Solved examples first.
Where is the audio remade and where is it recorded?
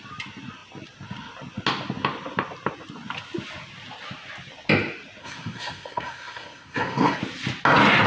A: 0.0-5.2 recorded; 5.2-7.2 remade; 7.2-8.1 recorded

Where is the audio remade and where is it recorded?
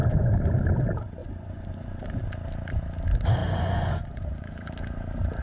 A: 0.0-0.5 remade; 0.5-1.2 recorded; 1.2-2.1 remade; 2.1-3.4 recorded; 3.4-4.7 remade; 4.7-5.4 recorded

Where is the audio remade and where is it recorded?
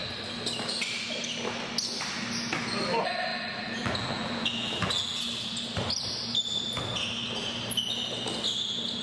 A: 0.0-3.3 recorded; 3.3-5.2 remade; 5.2-9.0 recorded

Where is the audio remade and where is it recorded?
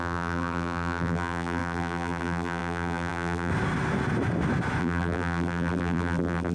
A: 0.0-3.5 remade; 3.5-4.8 recorded; 4.8-6.5 remade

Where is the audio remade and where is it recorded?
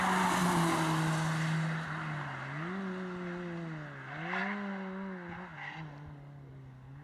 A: 0.0-7.0 recorded